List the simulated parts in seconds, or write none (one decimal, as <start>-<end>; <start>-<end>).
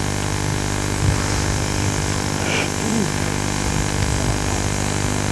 none